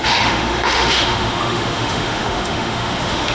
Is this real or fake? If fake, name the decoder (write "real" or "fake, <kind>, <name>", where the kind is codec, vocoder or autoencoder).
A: fake, autoencoder, DAC-VAE